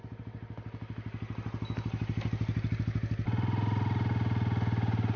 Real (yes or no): yes